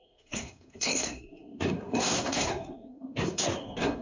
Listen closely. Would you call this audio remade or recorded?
remade